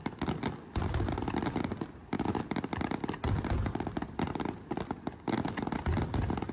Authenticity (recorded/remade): recorded